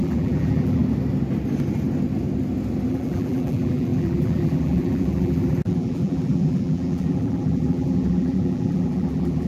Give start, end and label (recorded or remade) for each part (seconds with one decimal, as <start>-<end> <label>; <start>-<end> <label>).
0.0-0.8 remade; 0.8-2.9 recorded; 2.9-9.5 remade